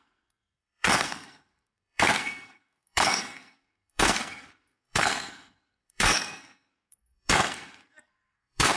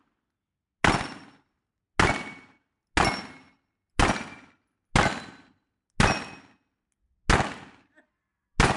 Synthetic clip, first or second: first